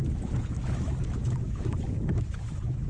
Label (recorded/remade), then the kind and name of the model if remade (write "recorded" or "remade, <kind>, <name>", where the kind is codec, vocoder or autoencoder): remade, autoencoder, DAC-VAE